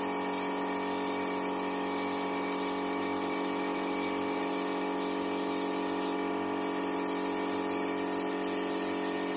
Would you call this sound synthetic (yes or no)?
no